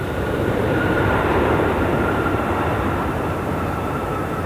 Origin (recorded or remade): remade